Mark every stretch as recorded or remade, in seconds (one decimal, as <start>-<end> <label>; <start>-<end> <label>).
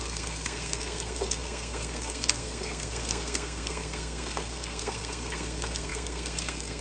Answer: 0.0-6.8 remade